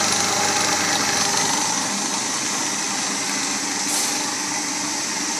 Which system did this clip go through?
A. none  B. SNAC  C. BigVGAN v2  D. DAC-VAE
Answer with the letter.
A